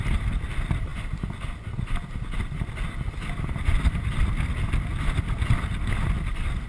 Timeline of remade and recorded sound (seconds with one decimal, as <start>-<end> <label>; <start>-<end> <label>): 0.0-6.7 recorded